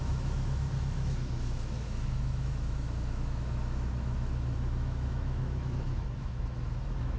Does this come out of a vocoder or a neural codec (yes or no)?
yes